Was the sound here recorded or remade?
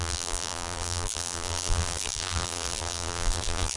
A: remade